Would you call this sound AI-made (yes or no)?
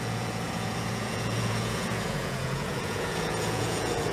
yes